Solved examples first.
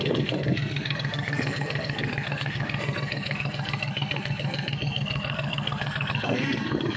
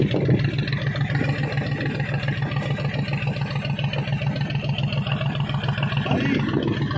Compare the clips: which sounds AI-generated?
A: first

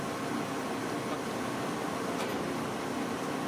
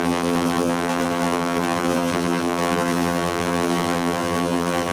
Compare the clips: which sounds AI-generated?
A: second